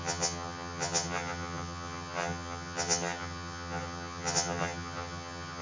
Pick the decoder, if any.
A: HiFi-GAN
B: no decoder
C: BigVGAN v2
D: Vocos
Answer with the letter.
A